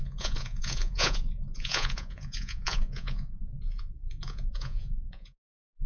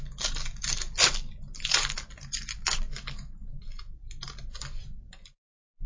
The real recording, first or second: second